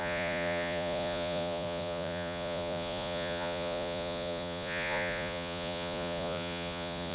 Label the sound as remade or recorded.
remade